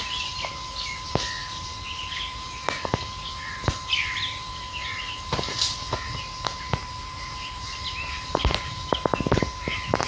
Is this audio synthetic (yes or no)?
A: no